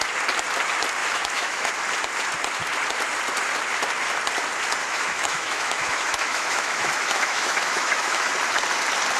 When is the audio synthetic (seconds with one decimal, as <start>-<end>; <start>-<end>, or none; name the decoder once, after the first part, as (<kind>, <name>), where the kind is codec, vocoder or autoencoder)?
1.0-1.7 (autoencoder, DAC-VAE); 4.8-8.3